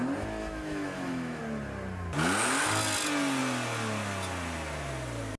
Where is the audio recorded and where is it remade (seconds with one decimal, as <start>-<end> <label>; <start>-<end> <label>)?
0.0-0.4 recorded; 0.4-1.4 remade; 1.4-5.4 recorded